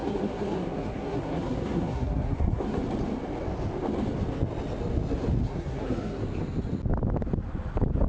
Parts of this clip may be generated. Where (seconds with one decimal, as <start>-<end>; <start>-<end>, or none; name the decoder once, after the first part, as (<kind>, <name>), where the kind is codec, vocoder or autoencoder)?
0.0-2.8 (codec, SNAC); 5.4-6.2